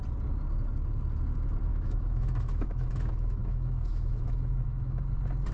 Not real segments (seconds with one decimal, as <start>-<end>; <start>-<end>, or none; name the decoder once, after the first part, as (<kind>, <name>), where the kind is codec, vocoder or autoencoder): 1.7-5.0 (autoencoder, DAC-VAE)